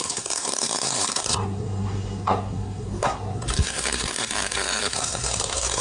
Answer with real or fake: fake